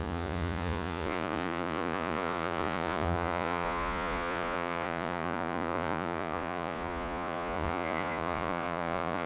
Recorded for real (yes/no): no